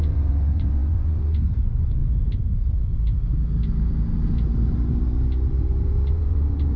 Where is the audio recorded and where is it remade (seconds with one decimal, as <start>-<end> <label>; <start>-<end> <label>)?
0.0-2.0 remade; 2.0-6.1 recorded; 6.1-6.8 remade

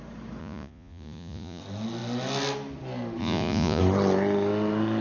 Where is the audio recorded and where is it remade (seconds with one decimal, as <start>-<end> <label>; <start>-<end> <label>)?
0.0-0.4 recorded; 0.4-1.6 remade; 1.6-3.2 recorded; 3.2-3.8 remade; 3.8-5.0 recorded

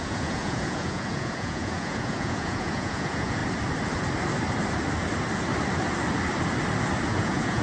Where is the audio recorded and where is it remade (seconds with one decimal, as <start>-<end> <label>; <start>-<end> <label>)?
0.0-3.4 remade; 3.4-7.1 recorded; 7.1-7.6 remade

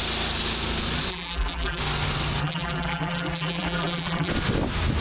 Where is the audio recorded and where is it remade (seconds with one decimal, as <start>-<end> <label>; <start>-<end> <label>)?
0.0-1.1 recorded; 1.1-1.8 remade; 1.8-2.4 recorded; 2.4-4.3 remade; 4.3-5.0 recorded

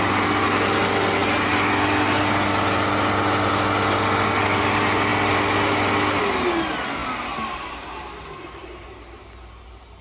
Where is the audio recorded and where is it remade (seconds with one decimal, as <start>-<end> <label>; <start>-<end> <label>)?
0.0-10.0 recorded

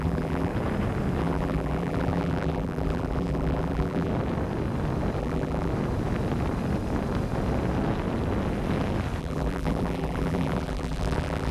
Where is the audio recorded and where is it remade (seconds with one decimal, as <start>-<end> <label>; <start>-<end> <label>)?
0.0-0.5 remade; 0.5-1.2 recorded; 1.2-4.1 remade; 4.1-5.2 recorded; 5.2-5.7 remade; 5.7-9.2 recorded; 9.2-11.5 remade